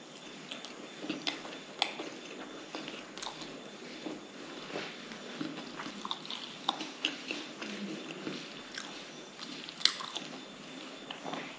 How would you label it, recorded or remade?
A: recorded